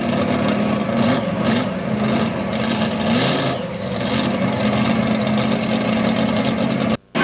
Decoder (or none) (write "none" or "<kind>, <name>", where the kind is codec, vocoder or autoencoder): none